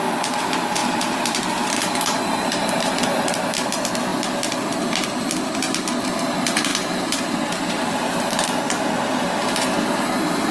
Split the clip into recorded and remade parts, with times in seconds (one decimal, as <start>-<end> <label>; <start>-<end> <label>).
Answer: 0.0-6.7 recorded; 6.7-7.8 remade; 7.8-10.5 recorded